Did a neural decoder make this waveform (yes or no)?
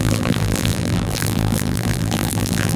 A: yes